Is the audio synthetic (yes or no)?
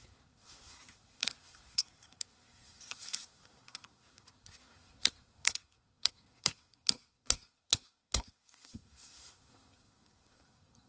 yes